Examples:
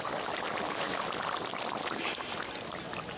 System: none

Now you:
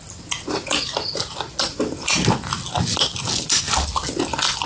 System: none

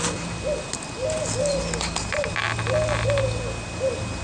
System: none